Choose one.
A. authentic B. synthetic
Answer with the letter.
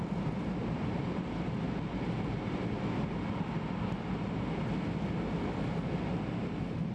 A